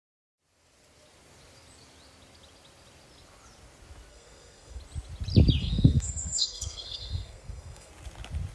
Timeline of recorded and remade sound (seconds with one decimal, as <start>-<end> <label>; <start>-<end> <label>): 0.0-4.1 recorded; 4.1-4.8 remade; 4.8-5.6 recorded; 5.6-7.9 remade; 7.9-8.5 recorded